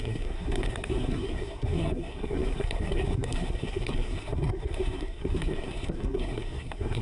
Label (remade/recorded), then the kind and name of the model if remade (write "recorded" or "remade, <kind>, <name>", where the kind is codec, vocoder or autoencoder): remade, codec, SNAC